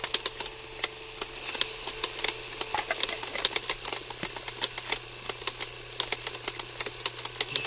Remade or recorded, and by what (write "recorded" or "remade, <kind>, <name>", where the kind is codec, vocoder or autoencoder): recorded